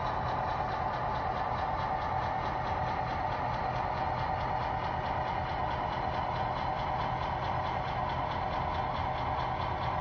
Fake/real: real